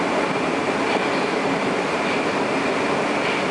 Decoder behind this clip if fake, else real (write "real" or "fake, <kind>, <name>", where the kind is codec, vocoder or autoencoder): real